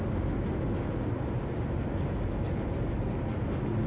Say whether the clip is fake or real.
real